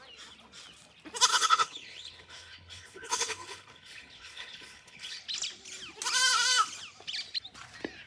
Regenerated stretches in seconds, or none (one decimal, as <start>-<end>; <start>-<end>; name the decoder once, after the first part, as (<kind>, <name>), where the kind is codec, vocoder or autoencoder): 1.3-5.2 (codec, HILCodec)